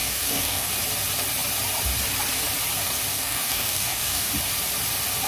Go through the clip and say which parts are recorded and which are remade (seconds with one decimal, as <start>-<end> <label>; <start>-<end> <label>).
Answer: 0.0-0.7 remade; 0.7-3.1 recorded; 3.1-4.3 remade; 4.3-5.3 recorded